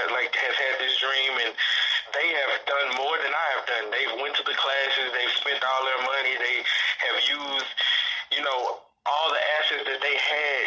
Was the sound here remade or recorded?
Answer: recorded